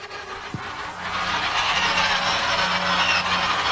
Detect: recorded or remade recorded